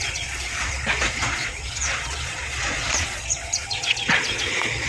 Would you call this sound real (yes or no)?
no